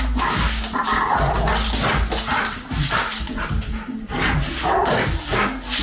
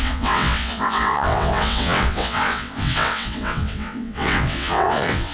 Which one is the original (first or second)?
first